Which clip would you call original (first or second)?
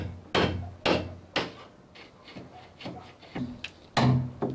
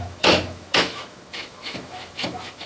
first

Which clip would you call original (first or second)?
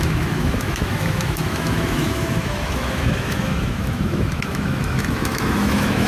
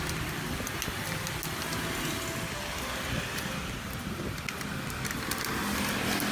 second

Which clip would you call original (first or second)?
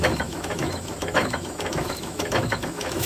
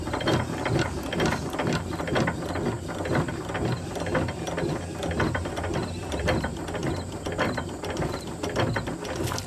second